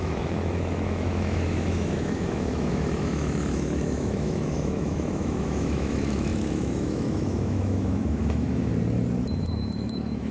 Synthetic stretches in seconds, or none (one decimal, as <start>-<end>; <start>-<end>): 0.0-8.7; 9.4-10.3